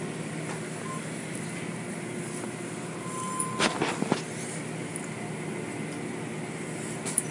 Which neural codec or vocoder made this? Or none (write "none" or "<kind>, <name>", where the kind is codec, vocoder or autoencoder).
none